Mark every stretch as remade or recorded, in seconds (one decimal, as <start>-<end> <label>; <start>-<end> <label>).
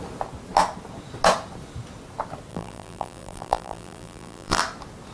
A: 0.0-2.5 recorded; 2.5-4.6 remade; 4.6-5.1 recorded